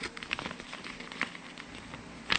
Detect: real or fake real